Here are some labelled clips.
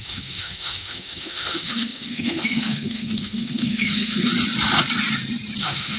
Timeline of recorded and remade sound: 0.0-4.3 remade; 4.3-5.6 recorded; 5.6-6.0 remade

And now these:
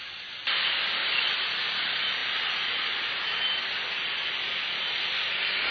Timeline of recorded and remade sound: 0.0-1.0 recorded; 1.0-1.6 remade; 1.6-5.7 recorded

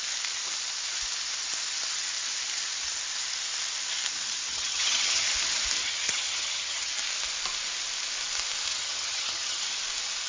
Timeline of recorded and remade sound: 0.0-4.5 recorded; 4.5-5.3 remade; 5.3-5.8 recorded; 5.8-6.9 remade; 6.9-8.7 recorded; 8.7-9.6 remade; 9.6-10.3 recorded

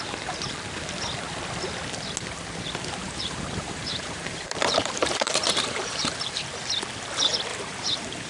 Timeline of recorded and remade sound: 0.0-3.0 recorded; 3.0-6.4 remade; 6.4-7.5 recorded; 7.5-8.3 remade

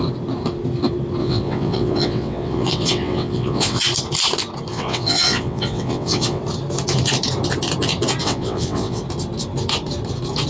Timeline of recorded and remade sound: 0.0-1.2 recorded; 1.2-3.8 remade; 3.8-4.7 recorded; 4.7-6.4 remade; 6.4-8.2 recorded; 8.2-9.0 remade; 9.0-10.5 recorded

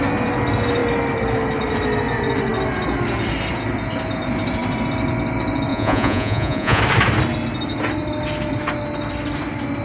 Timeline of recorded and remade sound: 0.0-5.7 recorded; 5.7-6.8 remade; 6.8-9.8 recorded

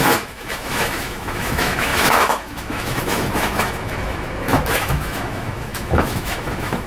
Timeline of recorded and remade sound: 0.0-6.9 remade

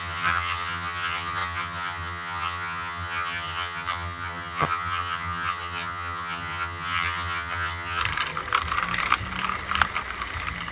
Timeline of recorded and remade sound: 0.0-8.0 remade; 8.0-10.7 recorded